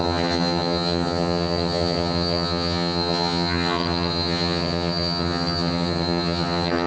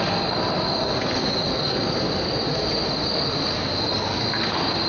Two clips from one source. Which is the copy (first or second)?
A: first